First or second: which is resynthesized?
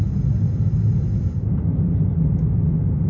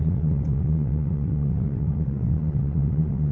second